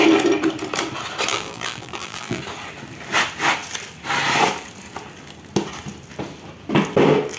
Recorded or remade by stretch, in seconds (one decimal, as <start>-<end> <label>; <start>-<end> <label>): 0.0-1.3 recorded; 1.3-2.4 remade; 2.4-7.4 recorded